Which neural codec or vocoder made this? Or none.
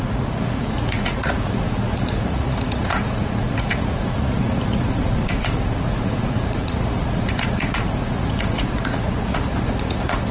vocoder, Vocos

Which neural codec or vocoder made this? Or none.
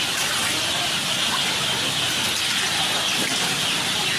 none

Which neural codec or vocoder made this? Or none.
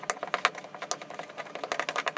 none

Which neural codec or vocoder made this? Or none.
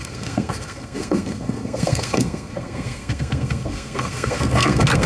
codec, SNAC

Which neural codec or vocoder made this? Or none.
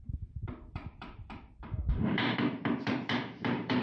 vocoder, BigVGAN v2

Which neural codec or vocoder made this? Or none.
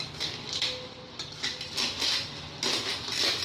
none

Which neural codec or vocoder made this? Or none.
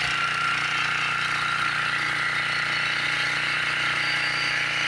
none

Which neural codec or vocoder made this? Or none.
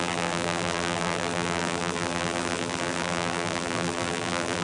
vocoder, BigVGAN v2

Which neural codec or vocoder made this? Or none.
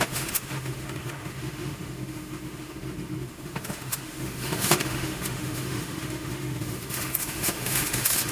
autoencoder, DAC-VAE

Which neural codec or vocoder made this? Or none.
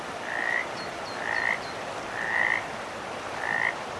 none